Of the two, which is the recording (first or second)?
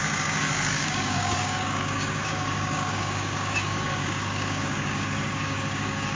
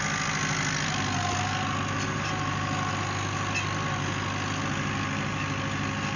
second